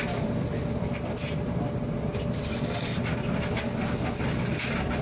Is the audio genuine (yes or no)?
yes